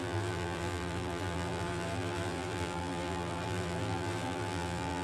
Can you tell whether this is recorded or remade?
remade